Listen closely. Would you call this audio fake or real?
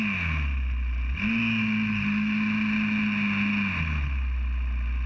real